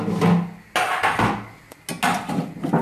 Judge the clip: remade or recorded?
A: recorded